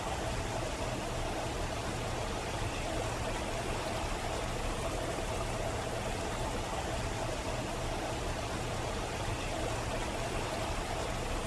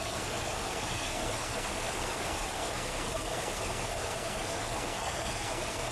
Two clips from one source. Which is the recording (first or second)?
first